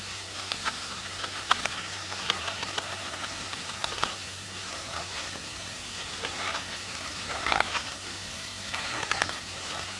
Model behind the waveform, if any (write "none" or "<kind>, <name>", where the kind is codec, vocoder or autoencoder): codec, SNAC